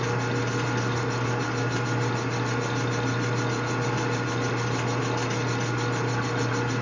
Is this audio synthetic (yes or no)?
no